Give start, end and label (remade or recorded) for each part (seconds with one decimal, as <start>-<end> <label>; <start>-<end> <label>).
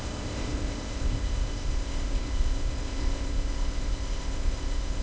0.0-5.0 remade